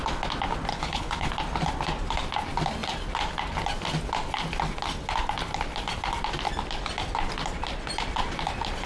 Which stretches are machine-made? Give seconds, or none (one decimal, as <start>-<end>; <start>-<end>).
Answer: 0.7-1.3